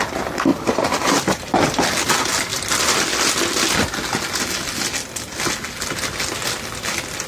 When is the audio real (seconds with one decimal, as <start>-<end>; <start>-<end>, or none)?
0.0-0.5; 1.4-2.5; 3.5-7.3